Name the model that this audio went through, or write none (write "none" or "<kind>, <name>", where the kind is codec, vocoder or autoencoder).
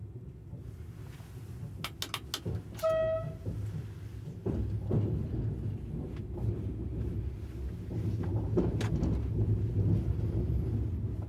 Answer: none